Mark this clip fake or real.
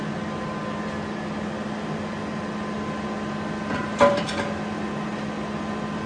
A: real